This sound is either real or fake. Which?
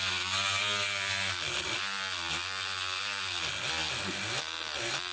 real